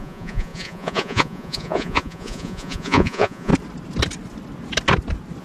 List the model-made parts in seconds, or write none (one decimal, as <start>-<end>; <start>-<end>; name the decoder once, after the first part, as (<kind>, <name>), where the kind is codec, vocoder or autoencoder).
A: 0.0-3.5 (vocoder, Vocos)

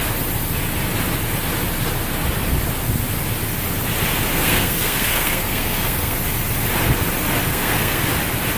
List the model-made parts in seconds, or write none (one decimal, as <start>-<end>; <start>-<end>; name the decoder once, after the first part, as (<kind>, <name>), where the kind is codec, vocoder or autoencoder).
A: 4.3-6.2 (codec, SNAC); 7.5-8.0

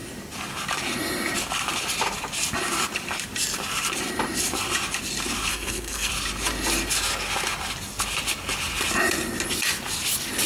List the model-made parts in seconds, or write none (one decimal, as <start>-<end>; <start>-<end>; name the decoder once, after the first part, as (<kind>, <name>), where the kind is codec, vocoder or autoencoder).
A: 5.5-6.1 (codec, SNAC)

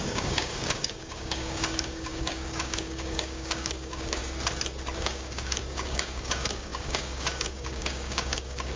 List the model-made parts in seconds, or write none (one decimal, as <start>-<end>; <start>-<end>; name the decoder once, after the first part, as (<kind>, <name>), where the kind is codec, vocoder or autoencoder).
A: 0.0-4.2 (codec, DAC); 5.0-8.8

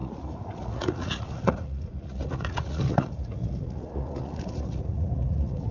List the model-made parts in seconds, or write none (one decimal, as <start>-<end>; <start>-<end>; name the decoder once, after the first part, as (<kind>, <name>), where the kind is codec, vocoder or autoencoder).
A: 0.0-5.7 (vocoder, Vocos)

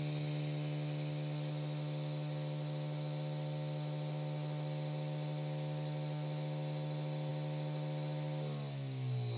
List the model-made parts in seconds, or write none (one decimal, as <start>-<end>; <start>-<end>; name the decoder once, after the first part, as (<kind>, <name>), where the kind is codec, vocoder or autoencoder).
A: none

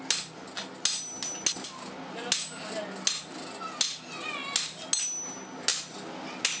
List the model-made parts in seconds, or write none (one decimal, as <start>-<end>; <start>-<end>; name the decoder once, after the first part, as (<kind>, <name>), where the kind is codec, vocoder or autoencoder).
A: none